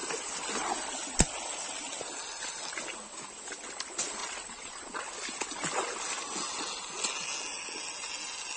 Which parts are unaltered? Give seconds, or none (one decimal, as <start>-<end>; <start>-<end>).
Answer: 0.0-4.2; 5.0-8.6